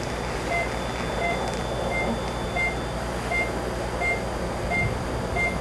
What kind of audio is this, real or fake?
real